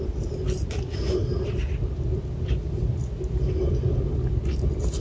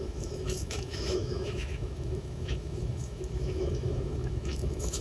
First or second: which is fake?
second